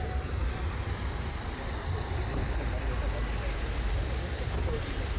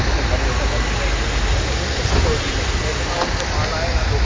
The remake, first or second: first